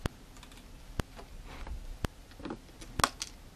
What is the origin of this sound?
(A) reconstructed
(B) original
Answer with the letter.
B